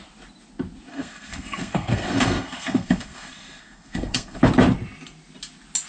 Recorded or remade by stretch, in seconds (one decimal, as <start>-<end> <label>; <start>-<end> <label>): 0.0-0.9 recorded; 0.9-4.4 remade; 4.4-5.9 recorded